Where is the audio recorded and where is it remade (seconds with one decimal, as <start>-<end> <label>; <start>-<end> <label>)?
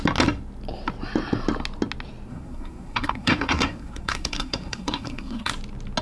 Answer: 0.0-2.3 recorded; 2.3-5.5 remade; 5.5-6.0 recorded